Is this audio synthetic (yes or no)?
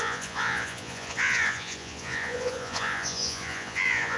yes